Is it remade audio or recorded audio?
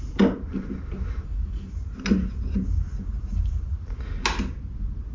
recorded